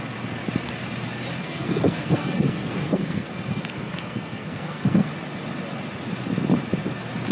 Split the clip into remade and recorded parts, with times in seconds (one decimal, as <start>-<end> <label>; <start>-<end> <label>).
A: 0.0-1.4 recorded; 1.4-5.1 remade; 5.1-7.3 recorded